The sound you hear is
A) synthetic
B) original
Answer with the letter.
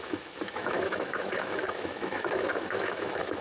A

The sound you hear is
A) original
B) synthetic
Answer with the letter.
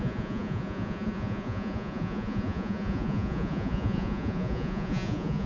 B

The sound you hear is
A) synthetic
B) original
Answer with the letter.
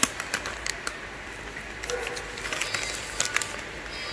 B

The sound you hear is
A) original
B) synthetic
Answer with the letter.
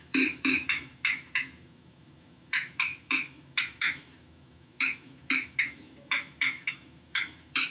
B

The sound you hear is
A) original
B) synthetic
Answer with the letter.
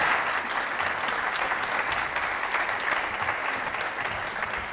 A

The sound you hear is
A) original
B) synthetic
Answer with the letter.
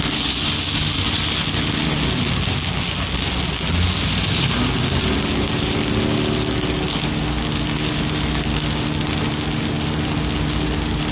A